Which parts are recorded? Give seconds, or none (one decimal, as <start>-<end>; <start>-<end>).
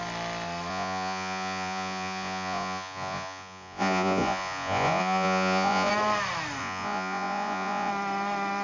0.0-0.7; 5.9-6.6; 7.9-8.6